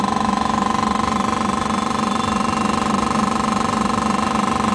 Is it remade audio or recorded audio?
recorded